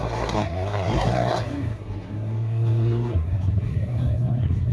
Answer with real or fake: fake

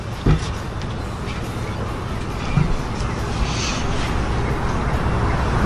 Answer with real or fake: real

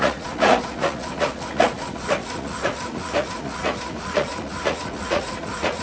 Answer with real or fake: fake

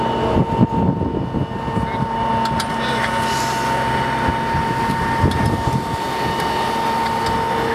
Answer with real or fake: real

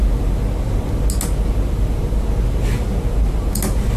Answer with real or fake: real